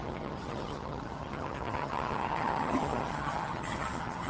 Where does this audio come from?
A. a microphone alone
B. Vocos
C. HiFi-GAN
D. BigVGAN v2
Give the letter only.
C